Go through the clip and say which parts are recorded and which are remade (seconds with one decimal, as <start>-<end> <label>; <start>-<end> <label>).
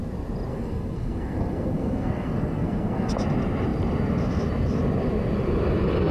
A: 0.0-0.5 recorded; 0.5-3.1 remade; 3.1-6.1 recorded